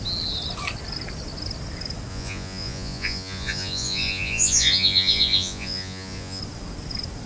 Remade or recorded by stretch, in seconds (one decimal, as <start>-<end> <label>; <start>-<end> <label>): 0.0-2.1 recorded; 2.1-6.4 remade; 6.4-7.3 recorded